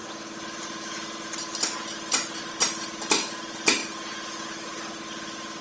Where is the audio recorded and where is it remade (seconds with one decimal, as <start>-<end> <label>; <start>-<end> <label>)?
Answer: 0.0-5.6 recorded